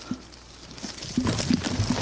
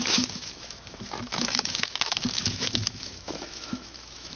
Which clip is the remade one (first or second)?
second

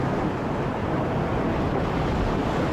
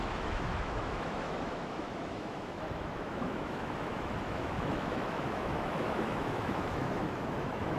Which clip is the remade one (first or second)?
second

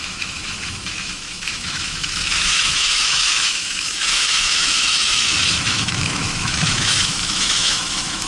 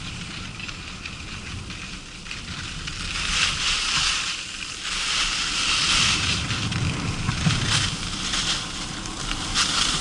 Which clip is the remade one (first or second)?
first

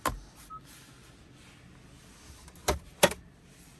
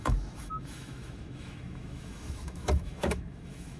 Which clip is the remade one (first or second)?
second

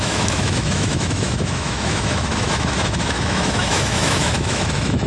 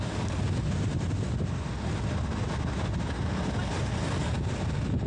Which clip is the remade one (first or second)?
first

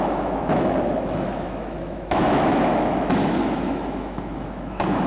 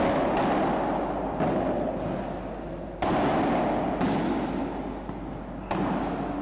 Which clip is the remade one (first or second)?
first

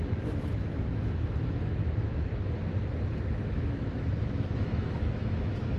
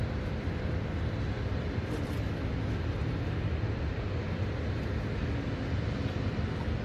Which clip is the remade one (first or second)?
first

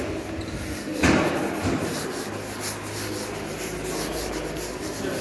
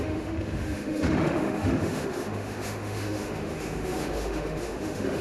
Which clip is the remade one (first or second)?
second